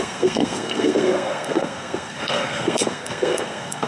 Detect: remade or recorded remade